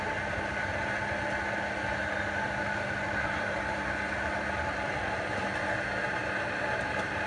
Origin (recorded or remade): recorded